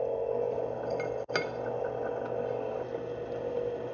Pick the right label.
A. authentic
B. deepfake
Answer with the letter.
A